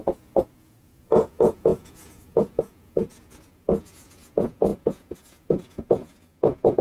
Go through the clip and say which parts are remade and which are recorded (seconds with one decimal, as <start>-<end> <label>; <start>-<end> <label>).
0.0-6.8 remade